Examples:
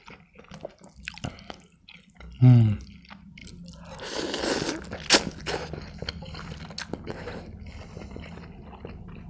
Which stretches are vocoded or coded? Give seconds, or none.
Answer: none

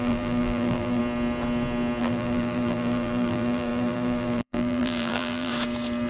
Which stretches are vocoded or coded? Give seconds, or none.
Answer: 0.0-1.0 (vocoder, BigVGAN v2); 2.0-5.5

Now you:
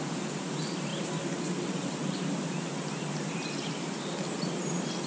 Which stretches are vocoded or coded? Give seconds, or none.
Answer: 0.9-4.0 (vocoder, BigVGAN v2)

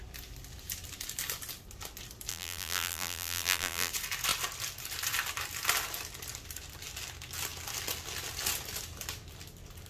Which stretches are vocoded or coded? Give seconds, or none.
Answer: 2.3-3.9 (vocoder, BigVGAN v2)